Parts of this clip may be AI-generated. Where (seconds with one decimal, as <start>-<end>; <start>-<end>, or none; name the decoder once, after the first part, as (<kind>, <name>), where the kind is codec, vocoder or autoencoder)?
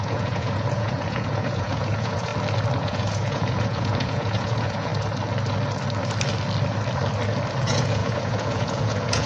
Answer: 0.0-2.3 (vocoder, Vocos); 2.8-4.9; 7.6-9.3